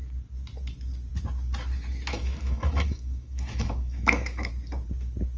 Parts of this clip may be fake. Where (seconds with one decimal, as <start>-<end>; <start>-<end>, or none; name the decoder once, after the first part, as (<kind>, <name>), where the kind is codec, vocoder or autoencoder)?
2.1-4.5 (autoencoder, DAC-VAE)